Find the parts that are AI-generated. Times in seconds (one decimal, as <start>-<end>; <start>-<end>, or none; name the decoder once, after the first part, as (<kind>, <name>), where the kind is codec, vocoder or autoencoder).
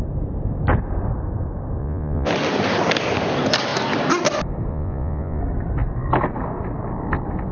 1.8-2.3 (vocoder, Vocos); 4.7-5.4